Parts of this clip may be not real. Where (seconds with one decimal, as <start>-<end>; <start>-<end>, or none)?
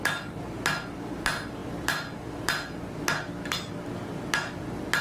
none